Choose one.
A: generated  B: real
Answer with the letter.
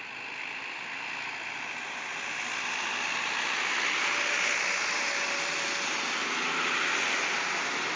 B